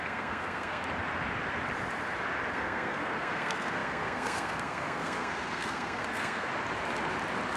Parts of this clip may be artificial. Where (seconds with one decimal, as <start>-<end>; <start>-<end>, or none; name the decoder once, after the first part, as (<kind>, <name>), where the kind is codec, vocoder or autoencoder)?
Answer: 0.0-0.8 (codec, SNAC); 2.5-6.5